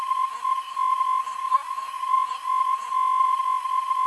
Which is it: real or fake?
fake